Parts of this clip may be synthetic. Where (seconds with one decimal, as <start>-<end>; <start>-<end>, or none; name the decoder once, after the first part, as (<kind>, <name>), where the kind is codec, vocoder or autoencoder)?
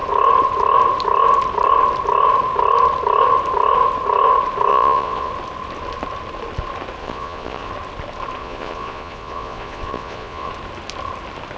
4.7-5.3 (vocoder, Vocos); 7.0-7.7; 8.4-10.5